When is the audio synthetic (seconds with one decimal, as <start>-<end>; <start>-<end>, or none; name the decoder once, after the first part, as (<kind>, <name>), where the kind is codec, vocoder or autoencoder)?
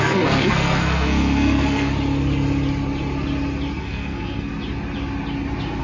0.0-1.9 (codec, SNAC); 3.8-4.5